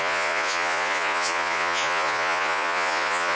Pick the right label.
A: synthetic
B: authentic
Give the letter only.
A